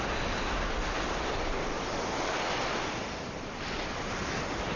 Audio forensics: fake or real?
real